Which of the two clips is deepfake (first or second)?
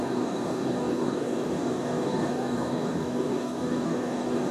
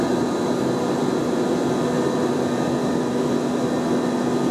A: first